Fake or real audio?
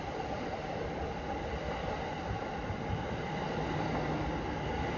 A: fake